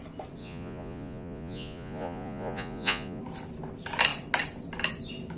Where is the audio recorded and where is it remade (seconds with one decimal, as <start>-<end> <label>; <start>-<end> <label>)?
0.0-0.4 recorded; 0.4-3.2 remade; 3.2-5.4 recorded